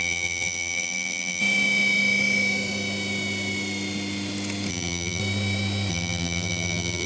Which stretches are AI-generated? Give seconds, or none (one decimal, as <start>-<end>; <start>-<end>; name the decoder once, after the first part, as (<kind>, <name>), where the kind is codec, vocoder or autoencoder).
0.0-1.4 (vocoder, BigVGAN v2); 4.7-5.2; 5.9-7.1